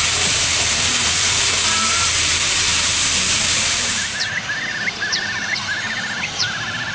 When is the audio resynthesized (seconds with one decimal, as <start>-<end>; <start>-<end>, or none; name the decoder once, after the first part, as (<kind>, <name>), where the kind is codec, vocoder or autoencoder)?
0.0-6.9 (vocoder, BigVGAN v2)